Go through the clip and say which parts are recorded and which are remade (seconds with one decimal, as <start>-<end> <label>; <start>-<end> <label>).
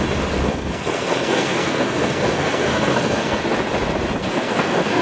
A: 0.0-0.4 recorded; 0.4-3.4 remade; 3.4-4.2 recorded; 4.2-5.0 remade